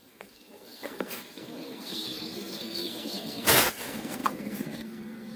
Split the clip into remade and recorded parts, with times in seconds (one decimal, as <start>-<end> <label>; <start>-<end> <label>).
0.0-5.4 remade